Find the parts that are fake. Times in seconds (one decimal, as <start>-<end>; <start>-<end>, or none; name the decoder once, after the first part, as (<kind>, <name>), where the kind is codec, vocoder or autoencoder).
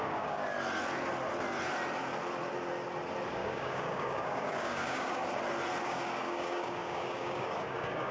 0.0-0.4 (codec, DAC); 3.3-5.2; 5.8-8.1